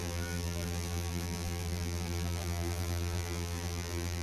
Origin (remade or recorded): remade